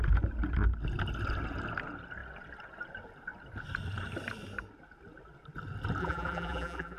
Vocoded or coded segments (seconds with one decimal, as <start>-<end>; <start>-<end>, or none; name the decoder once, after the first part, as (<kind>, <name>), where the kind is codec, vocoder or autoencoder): 6.0-7.0 (vocoder, BigVGAN v2)